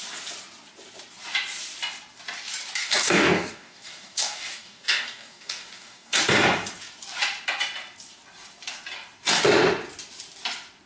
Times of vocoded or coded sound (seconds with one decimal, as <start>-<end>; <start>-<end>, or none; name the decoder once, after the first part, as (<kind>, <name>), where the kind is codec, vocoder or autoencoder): 2.8-6.2 (codec, DAC)

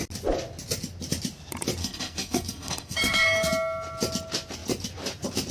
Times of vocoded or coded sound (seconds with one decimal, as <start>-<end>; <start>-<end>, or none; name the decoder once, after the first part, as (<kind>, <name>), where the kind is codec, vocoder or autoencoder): 1.8-3.5 (codec, SNAC)

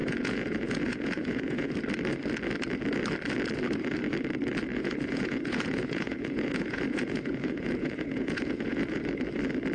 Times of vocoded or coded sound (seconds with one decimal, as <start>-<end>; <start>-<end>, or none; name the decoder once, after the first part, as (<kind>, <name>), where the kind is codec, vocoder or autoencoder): 0.0-1.7 (vocoder, Vocos); 4.7-9.0

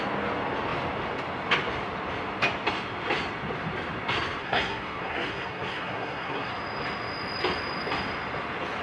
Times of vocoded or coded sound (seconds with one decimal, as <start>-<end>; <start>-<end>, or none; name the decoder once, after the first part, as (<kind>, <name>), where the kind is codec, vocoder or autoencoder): 4.4-6.5 (codec, SNAC)

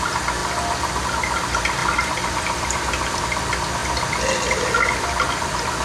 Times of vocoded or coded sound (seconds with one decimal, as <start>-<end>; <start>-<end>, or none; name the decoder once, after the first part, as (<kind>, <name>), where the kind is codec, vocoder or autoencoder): 1.8-3.2 (vocoder, BigVGAN v2)

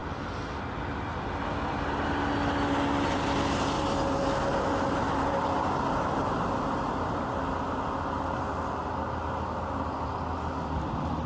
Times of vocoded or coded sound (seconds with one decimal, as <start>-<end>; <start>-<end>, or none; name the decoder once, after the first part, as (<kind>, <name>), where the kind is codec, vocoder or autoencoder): none